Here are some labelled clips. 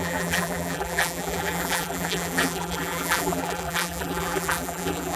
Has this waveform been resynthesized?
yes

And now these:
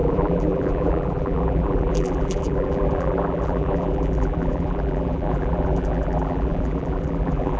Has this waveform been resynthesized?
yes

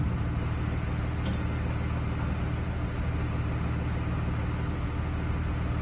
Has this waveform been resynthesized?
no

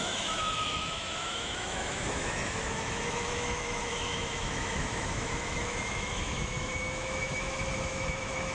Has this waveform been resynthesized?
yes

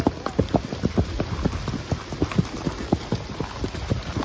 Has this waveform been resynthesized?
no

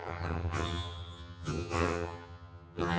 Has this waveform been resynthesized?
yes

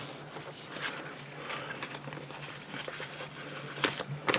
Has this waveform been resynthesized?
no